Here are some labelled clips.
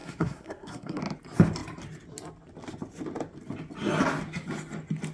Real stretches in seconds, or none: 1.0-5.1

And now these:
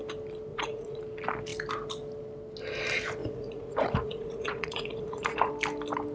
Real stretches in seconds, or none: 0.0-0.5; 1.0-3.2; 5.5-6.1

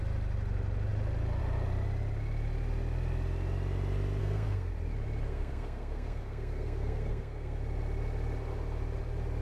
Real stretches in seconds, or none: 0.0-4.2; 4.7-5.3; 7.6-9.4